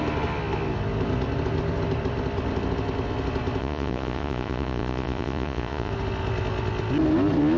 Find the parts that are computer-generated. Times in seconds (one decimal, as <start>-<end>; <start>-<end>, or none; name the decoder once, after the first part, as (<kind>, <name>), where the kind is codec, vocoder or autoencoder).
3.6-5.9 (vocoder, Vocos)